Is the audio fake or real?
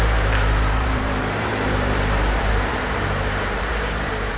fake